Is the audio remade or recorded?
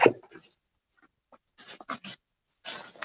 recorded